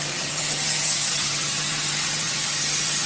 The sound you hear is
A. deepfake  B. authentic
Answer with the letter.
A